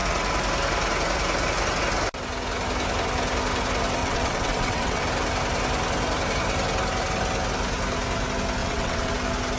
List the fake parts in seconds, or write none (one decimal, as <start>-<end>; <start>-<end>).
4.0-5.0; 8.6-9.1